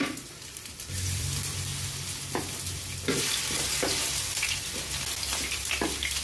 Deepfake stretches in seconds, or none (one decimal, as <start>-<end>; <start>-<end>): 0.0-1.7; 5.4-6.2